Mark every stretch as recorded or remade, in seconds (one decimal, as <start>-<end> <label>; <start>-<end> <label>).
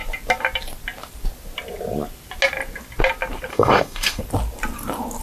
0.0-3.5 recorded; 3.5-4.2 remade; 4.2-5.2 recorded